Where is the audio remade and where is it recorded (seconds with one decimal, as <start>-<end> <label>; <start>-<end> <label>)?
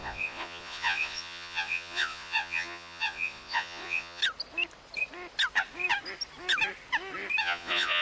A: 0.0-4.2 remade; 4.2-7.4 recorded; 7.4-8.0 remade